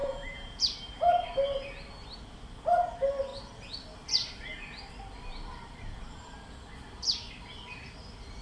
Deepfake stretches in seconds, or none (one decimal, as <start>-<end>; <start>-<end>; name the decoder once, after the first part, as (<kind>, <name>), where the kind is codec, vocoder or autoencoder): 0.0-0.6 (vocoder, Vocos)